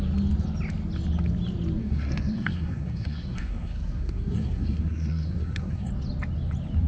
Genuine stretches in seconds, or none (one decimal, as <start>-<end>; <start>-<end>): 0.0-1.8; 5.9-6.9